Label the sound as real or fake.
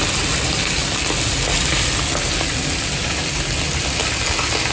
real